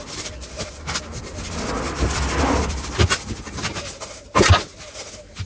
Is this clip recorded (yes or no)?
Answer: yes